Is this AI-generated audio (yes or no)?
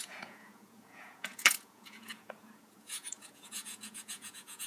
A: yes